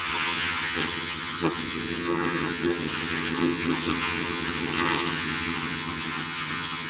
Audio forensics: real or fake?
fake